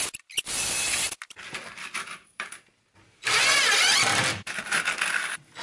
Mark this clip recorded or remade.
recorded